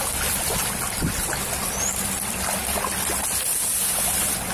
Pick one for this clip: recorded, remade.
recorded